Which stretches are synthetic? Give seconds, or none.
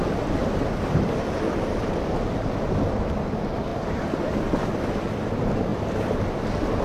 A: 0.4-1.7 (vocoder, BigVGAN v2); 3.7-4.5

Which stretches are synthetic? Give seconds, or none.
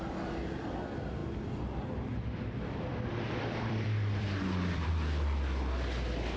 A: 1.2-4.9 (vocoder, BigVGAN v2)